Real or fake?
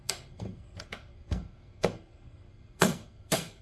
fake